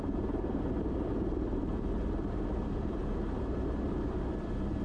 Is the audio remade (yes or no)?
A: yes